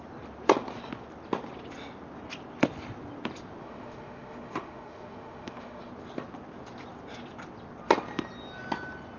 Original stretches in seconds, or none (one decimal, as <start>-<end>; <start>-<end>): 0.0-3.6; 5.9-9.2